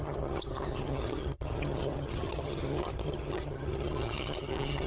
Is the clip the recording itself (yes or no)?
no